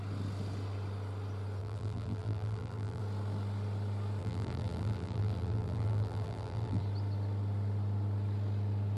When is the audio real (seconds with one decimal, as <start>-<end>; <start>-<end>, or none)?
0.0-1.6; 3.0-4.2; 6.8-9.0

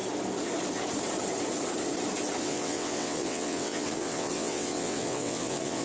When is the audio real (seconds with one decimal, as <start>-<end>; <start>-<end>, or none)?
0.0-2.4